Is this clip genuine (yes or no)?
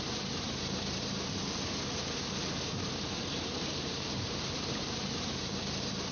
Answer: no